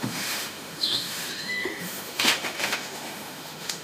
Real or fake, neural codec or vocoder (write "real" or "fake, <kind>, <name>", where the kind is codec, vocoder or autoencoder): fake, autoencoder, DAC-VAE